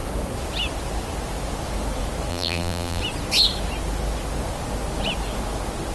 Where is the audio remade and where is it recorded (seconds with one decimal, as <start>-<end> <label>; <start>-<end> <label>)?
0.0-2.3 recorded; 2.3-3.0 remade; 3.0-5.9 recorded

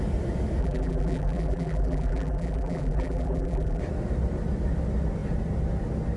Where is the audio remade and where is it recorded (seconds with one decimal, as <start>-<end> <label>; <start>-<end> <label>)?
0.0-0.6 recorded; 0.6-3.8 remade; 3.8-6.2 recorded